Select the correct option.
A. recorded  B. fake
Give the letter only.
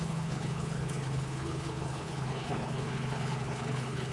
B